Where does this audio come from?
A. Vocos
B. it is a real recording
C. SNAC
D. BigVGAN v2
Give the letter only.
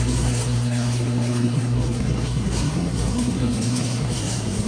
C